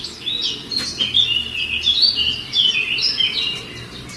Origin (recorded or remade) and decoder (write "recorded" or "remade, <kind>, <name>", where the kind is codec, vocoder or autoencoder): recorded